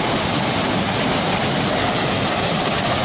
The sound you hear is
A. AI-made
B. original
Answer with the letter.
B